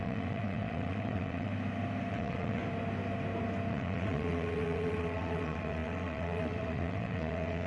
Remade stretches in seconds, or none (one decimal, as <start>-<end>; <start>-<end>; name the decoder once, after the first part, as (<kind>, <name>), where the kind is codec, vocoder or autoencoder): 0.0-1.5 (vocoder, WaveNeXt); 2.1-2.6; 3.7-7.7